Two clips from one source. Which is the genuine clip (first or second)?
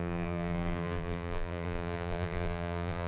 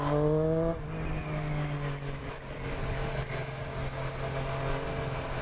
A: second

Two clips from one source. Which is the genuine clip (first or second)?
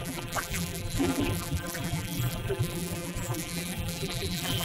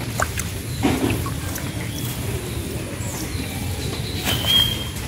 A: second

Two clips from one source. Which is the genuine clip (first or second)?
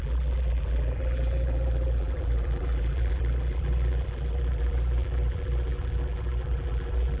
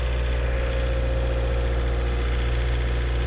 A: second